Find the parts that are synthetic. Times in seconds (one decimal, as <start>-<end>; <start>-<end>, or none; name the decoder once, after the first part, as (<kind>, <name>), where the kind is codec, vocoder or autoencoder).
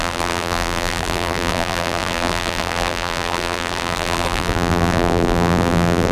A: 0.0-6.1 (vocoder, BigVGAN v2)